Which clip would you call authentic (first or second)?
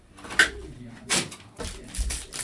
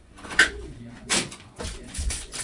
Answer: first